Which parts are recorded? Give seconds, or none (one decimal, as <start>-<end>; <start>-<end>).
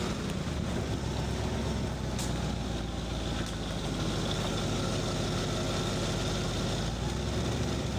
0.0-8.0